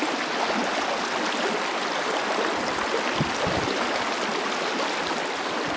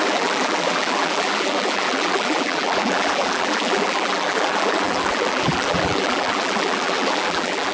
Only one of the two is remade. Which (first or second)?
second